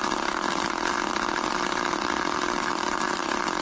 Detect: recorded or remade recorded